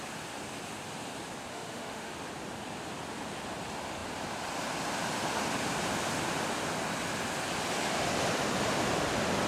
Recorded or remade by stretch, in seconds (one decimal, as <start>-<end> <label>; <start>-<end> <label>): 0.0-1.5 recorded; 1.5-2.1 remade; 2.1-9.5 recorded